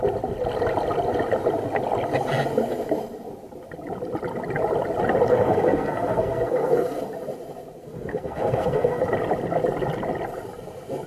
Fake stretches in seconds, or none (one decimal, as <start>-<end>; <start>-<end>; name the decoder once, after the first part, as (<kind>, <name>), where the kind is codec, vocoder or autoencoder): 5.3-7.0 (codec, SNAC); 7.8-9.0